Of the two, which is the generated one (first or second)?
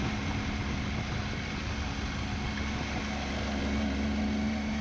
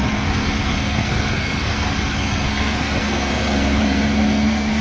second